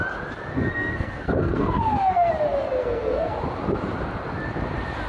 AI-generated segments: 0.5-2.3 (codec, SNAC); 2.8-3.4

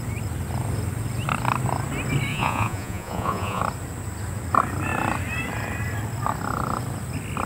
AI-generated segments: 2.3-3.6 (vocoder, Vocos)

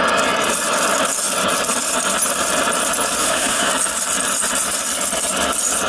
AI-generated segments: 3.2-3.7 (autoencoder, DAC-VAE)

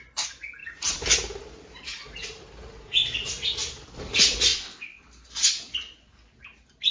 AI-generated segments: 4.5-5.0 (vocoder, WaveNeXt)

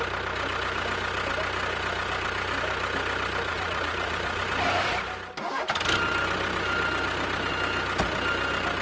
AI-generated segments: 3.5-4.4 (vocoder, Vocos)

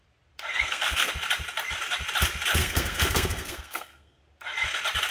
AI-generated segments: 0.5-1.1 (codec, SNAC); 2.6-4.2

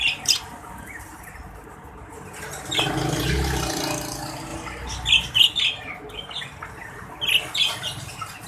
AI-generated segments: none